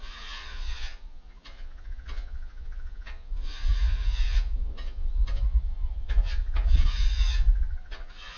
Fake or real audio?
fake